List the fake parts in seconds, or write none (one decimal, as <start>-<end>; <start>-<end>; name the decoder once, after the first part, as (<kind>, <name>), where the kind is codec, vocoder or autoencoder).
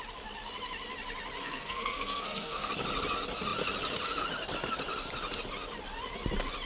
1.4-2.7 (codec, SNAC)